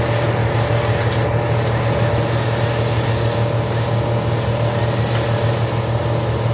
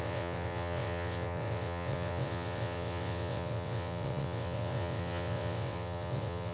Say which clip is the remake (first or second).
second